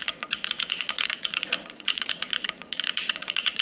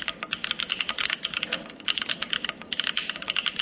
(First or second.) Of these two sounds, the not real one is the first